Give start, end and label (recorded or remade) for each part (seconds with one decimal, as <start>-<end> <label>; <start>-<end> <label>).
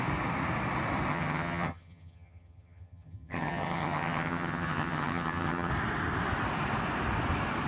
0.0-1.1 recorded; 1.1-5.7 remade; 5.7-7.7 recorded